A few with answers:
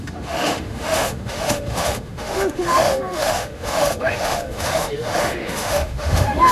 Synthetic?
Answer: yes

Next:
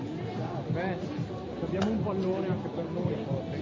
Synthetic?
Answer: no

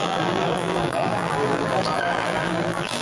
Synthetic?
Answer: yes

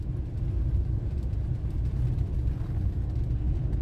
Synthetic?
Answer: no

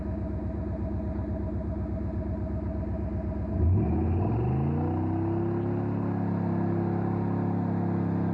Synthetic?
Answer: no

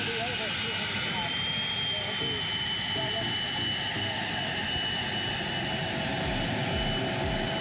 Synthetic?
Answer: no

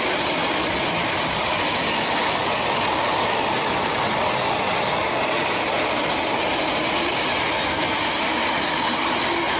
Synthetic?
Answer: no